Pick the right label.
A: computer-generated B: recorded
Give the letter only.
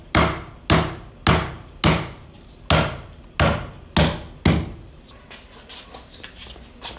B